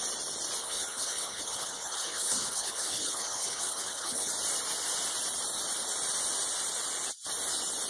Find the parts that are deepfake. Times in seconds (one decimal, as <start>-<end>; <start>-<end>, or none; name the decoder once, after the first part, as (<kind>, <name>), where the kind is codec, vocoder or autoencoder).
0.6-4.3 (codec, HILCodec)